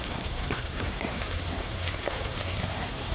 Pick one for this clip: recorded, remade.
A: remade